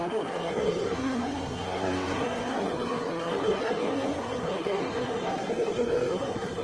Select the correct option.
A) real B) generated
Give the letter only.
B